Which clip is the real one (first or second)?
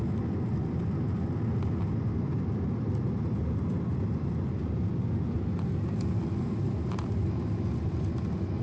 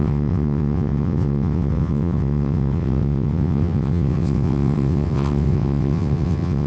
first